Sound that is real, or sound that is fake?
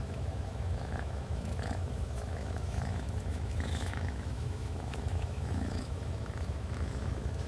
fake